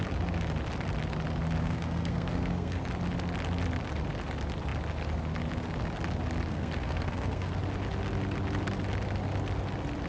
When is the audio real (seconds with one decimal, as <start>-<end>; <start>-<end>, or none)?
0.0-1.6; 2.8-6.5; 7.5-10.1